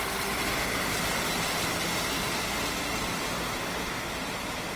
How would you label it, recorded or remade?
recorded